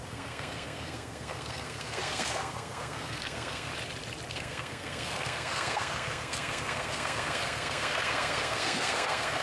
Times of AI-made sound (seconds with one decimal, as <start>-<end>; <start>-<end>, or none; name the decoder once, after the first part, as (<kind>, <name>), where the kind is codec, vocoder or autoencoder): 0.0-3.7 (codec, SNAC); 4.3-9.4